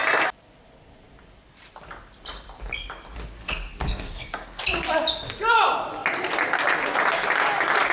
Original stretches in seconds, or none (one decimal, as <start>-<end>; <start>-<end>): 0.0-3.4; 4.6-7.9